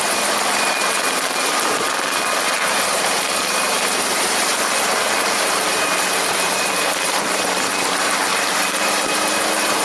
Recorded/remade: remade